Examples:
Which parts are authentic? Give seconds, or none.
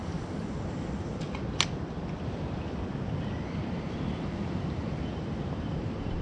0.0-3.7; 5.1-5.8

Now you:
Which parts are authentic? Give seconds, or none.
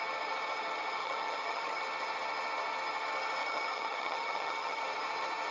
0.0-1.0; 1.8-3.4; 4.8-5.5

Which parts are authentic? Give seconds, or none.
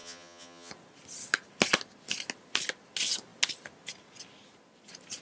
0.7-5.2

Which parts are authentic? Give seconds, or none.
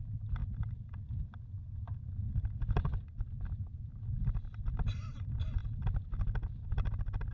0.0-7.3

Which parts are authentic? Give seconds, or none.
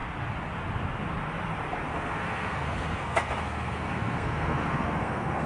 0.0-1.9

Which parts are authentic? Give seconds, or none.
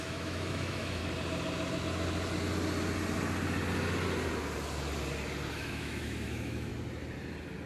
1.0-5.5; 6.7-7.7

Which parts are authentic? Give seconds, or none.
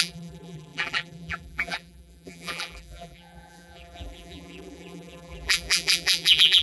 none